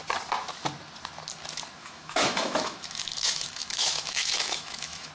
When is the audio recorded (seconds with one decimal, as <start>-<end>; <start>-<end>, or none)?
0.0-1.8